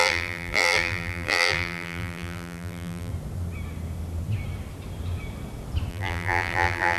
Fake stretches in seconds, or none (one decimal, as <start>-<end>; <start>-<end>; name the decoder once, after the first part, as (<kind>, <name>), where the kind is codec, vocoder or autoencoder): 0.0-3.1 (vocoder, BigVGAN v2); 5.9-7.0